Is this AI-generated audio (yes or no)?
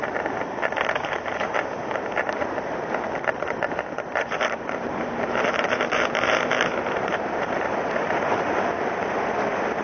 yes